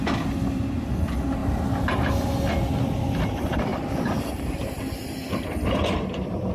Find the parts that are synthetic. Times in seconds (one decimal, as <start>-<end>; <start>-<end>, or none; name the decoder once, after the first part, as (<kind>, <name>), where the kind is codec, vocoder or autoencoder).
0.0-1.4 (vocoder, BigVGAN v2); 2.5-3.7; 4.3-6.5